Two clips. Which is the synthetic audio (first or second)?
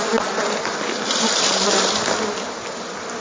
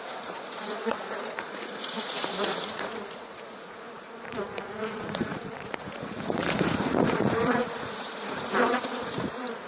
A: second